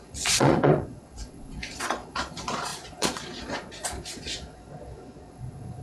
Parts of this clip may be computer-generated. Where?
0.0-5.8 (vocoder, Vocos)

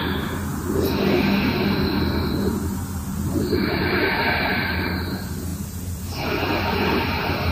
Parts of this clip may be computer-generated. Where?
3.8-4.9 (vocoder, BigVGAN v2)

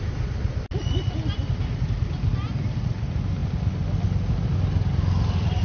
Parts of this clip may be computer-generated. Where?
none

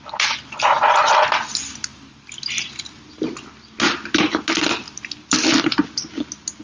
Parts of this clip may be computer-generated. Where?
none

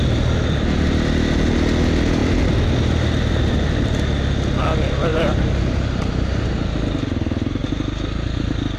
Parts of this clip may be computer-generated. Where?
5.1-6.3 (vocoder, BigVGAN v2)

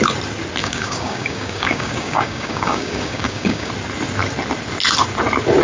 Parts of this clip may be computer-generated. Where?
0.6-3.7 (codec, DAC)